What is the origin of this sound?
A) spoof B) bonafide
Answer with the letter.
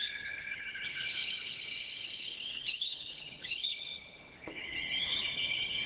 A